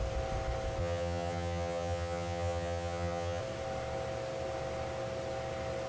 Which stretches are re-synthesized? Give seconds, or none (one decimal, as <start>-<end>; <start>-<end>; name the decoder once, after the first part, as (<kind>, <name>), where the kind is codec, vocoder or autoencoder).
0.8-3.4 (vocoder, HiFi-GAN)